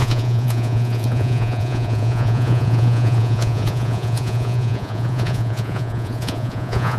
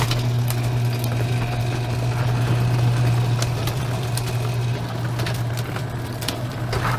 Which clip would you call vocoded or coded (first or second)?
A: first